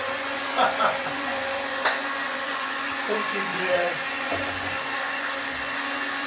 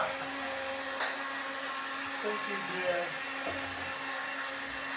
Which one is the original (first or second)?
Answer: second